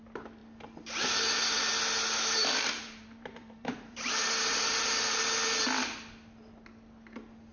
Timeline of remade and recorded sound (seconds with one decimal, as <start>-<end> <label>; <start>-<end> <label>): 0.0-2.4 recorded; 2.4-5.2 remade; 5.2-7.5 recorded